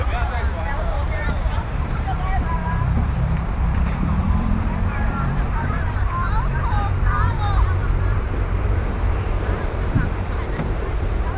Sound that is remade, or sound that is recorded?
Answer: remade